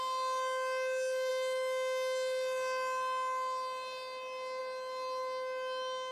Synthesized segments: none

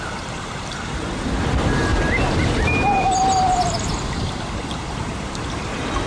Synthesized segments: 0.0-1.9; 5.6-6.1

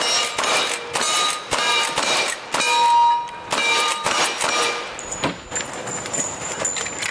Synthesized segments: 1.1-2.5; 3.6-4.2; 5.8-6.6